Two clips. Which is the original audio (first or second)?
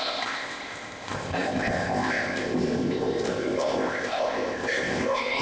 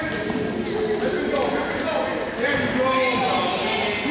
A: second